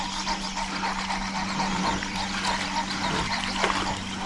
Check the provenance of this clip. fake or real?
real